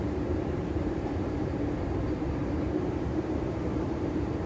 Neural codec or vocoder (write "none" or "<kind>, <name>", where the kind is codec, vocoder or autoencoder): vocoder, BigVGAN v2